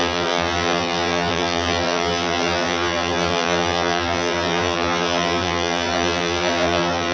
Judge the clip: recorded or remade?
remade